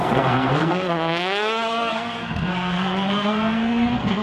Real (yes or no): no